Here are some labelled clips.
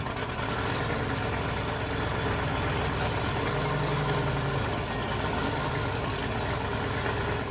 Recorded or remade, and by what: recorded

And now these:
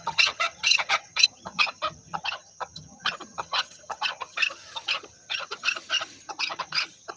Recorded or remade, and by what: remade, vocoder, HiFi-GAN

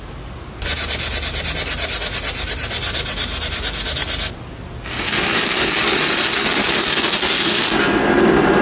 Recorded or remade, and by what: recorded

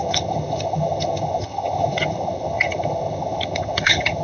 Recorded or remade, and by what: remade, vocoder, HiFi-GAN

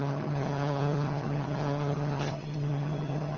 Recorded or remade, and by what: remade, vocoder, HiFi-GAN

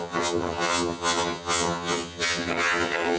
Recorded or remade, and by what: remade, vocoder, HiFi-GAN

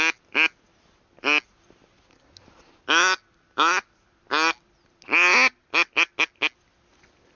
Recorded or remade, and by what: recorded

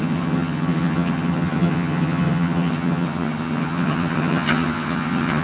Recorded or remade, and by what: remade, vocoder, HiFi-GAN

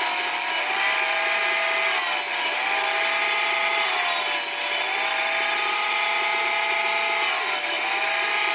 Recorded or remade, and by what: recorded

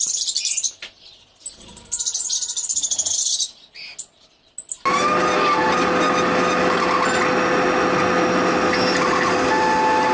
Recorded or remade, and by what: recorded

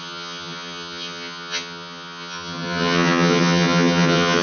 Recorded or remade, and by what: remade, vocoder, HiFi-GAN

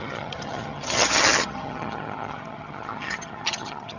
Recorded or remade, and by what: remade, vocoder, HiFi-GAN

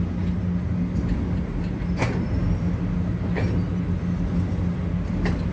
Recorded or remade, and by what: recorded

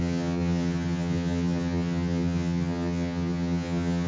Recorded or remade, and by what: remade, vocoder, HiFi-GAN